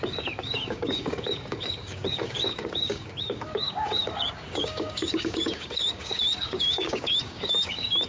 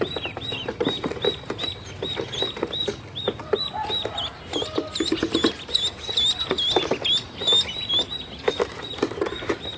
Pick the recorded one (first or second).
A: second